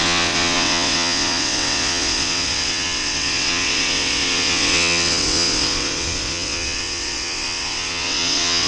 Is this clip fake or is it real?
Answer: fake